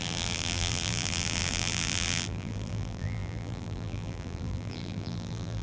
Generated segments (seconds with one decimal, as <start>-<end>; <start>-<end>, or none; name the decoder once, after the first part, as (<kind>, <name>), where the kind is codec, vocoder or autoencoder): 0.0-5.6 (vocoder, BigVGAN v2)